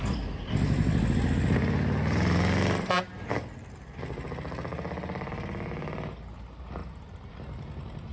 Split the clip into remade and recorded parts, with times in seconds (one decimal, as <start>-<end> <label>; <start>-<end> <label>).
0.0-8.1 recorded